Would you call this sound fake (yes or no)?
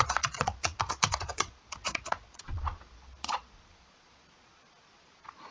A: yes